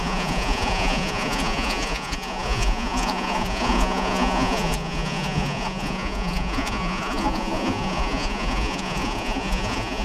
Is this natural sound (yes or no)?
no